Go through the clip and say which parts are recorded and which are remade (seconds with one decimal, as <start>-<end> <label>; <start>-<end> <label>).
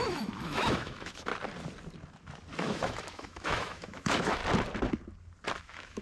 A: 0.0-1.3 remade; 1.3-2.6 recorded; 2.6-4.4 remade; 4.4-5.6 recorded; 5.6-6.0 remade